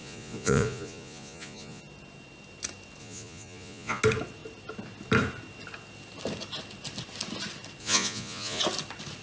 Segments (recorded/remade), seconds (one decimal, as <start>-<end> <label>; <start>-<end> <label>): 0.0-1.8 remade; 1.8-3.0 recorded; 3.0-4.0 remade; 4.0-7.8 recorded; 7.8-8.6 remade; 8.6-9.2 recorded

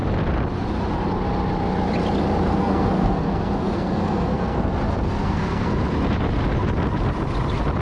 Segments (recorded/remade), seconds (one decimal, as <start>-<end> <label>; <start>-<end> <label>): 0.0-2.6 recorded; 2.6-4.7 remade; 4.7-5.2 recorded; 5.2-5.7 remade; 5.7-7.8 recorded

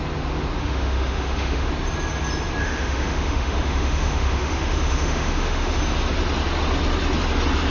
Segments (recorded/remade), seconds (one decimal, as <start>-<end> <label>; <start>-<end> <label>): 0.0-0.6 recorded; 0.6-1.7 remade; 1.7-2.6 recorded; 2.6-5.8 remade; 5.8-7.7 recorded

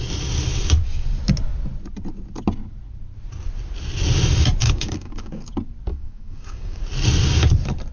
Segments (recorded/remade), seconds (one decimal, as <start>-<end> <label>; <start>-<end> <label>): 0.0-4.6 recorded; 4.6-5.5 remade; 5.5-5.9 recorded; 5.9-6.8 remade; 6.8-7.9 recorded